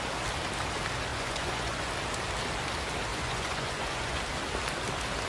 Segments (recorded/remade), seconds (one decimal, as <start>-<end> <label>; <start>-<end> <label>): 0.0-1.1 recorded; 1.1-1.9 remade; 1.9-3.1 recorded; 3.1-4.2 remade; 4.2-5.3 recorded